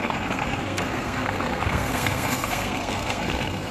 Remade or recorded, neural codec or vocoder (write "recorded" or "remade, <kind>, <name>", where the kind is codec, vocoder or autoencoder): remade, codec, SNAC